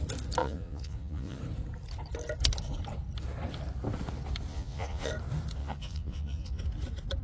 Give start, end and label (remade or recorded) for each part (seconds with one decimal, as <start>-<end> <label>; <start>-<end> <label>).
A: 0.0-0.4 recorded; 0.4-1.4 remade; 1.4-4.5 recorded; 4.5-5.1 remade; 5.1-5.6 recorded; 5.6-6.6 remade; 6.6-7.2 recorded